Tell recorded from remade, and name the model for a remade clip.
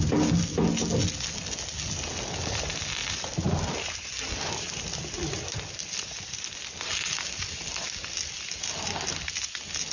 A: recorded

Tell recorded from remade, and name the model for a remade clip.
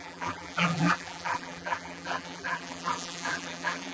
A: remade, vocoder, BigVGAN v2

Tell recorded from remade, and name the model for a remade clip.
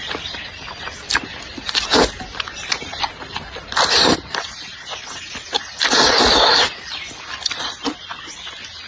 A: remade, vocoder, BigVGAN v2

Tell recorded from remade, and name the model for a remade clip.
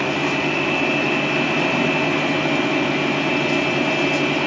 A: recorded